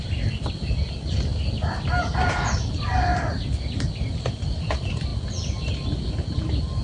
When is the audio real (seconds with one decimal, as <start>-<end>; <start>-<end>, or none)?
0.0-6.8